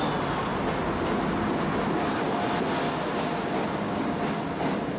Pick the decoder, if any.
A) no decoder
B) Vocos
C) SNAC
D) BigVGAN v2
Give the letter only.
A